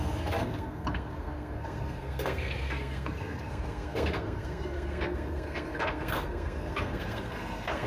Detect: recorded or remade remade